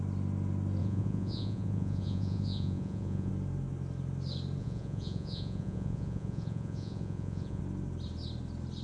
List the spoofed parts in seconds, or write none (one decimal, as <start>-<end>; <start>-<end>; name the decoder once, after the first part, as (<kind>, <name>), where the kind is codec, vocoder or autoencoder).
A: 0.8-3.3 (vocoder, Vocos); 4.6-7.6